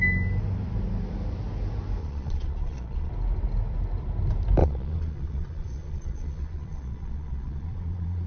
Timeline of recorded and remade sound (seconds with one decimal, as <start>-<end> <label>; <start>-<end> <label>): 0.0-2.0 recorded; 2.0-3.1 remade; 3.1-4.6 recorded; 4.6-8.3 remade